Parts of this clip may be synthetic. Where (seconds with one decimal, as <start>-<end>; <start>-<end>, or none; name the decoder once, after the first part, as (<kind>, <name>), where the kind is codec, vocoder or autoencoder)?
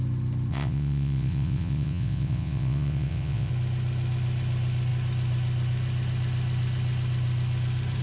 0.5-3.5 (vocoder, WaveNeXt)